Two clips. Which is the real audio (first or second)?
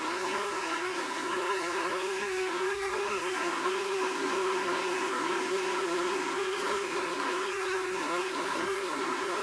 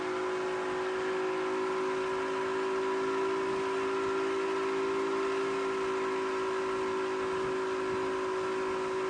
second